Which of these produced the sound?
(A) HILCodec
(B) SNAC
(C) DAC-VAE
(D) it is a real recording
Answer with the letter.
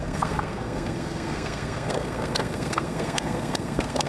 B